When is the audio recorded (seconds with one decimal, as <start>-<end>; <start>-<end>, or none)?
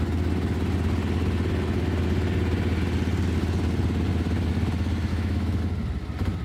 0.0-5.1; 5.6-6.4